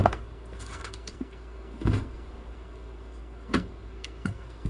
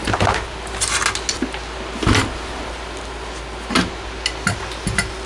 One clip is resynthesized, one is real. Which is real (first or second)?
second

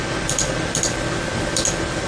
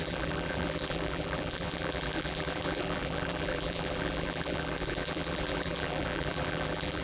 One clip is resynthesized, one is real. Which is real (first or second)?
first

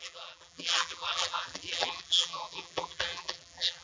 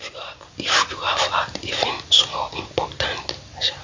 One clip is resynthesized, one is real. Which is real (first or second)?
second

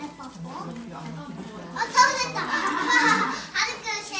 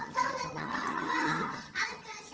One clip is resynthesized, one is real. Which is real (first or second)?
first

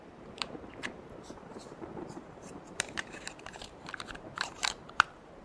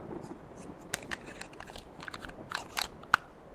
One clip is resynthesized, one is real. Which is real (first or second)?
second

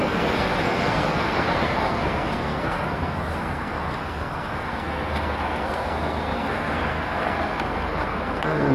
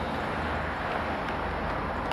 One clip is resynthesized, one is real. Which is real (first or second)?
second